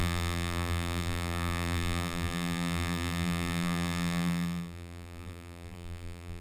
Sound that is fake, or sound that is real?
fake